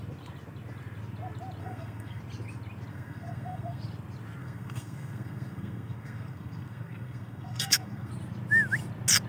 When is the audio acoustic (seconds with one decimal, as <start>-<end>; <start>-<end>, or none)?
0.0-1.6; 2.2-2.9; 3.8-4.4; 8.1-9.3